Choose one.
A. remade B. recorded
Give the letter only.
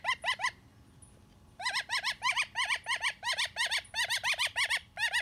B